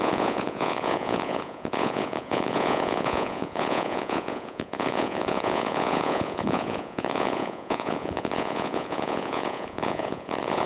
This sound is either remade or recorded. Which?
remade